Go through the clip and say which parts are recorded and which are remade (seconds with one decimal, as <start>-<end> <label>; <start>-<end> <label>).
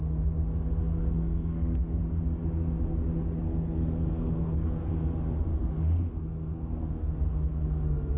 0.0-1.0 recorded; 1.0-2.0 remade; 2.0-3.4 recorded; 3.4-4.9 remade; 4.9-5.5 recorded; 5.5-7.2 remade; 7.2-8.2 recorded